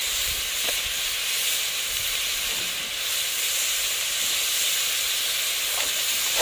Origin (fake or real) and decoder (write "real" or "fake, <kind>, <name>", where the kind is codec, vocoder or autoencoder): real